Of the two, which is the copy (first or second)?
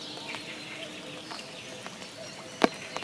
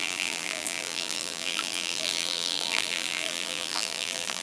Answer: second